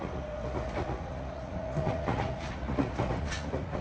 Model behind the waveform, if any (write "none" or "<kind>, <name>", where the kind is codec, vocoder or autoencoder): vocoder, Vocos